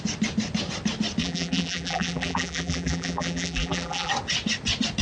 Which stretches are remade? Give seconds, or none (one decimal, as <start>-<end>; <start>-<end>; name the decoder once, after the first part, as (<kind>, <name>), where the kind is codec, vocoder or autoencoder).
1.2-4.1 (vocoder, BigVGAN v2)